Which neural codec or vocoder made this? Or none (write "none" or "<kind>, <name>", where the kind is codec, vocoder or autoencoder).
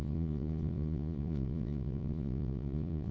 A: vocoder, Vocos